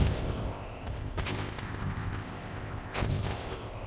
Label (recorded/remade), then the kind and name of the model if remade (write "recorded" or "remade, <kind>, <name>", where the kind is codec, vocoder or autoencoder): remade, codec, ZipCodec